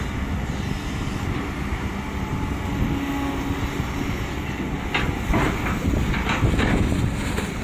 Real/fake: real